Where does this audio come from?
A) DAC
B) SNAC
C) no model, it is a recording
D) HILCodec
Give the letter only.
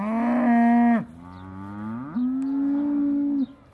C